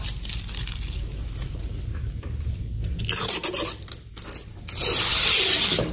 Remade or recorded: recorded